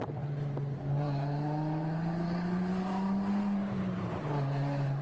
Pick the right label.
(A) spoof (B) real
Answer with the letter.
B